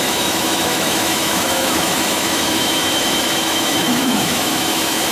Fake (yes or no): yes